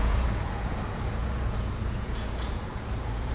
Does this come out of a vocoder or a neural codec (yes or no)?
yes